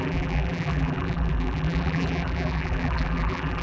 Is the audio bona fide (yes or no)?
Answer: no